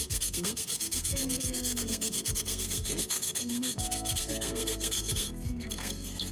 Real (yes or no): no